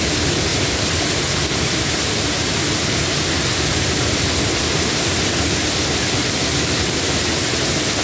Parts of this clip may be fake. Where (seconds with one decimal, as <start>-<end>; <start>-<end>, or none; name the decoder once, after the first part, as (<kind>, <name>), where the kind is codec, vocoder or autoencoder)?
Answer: 0.5-2.0 (vocoder, BigVGAN v2)